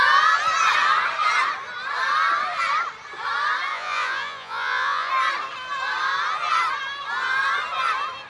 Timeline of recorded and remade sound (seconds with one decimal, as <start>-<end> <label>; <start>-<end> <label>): 0.0-3.7 recorded; 3.7-5.1 remade; 5.1-8.3 recorded